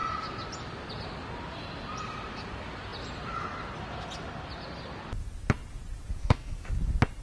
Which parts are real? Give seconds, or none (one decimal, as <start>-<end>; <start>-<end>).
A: 0.0-6.2; 6.7-7.2